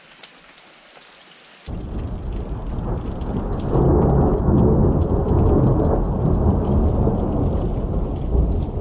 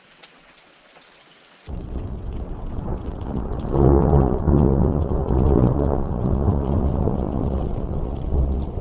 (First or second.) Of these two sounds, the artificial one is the second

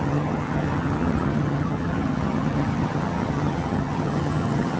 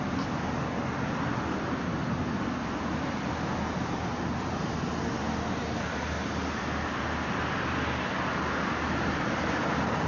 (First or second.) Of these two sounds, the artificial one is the first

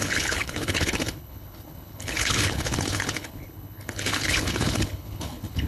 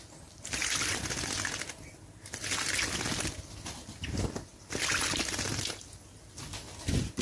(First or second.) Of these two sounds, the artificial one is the first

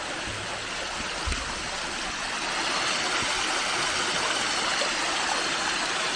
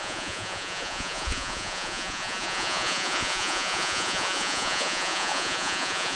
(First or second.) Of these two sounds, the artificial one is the second